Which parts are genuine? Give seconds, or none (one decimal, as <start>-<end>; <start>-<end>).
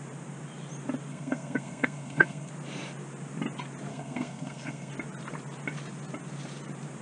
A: 0.0-1.1; 2.5-3.9; 4.9-7.0